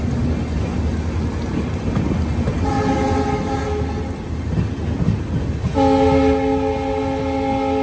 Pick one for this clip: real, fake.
real